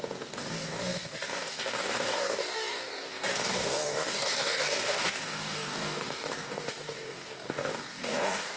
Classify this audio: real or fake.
fake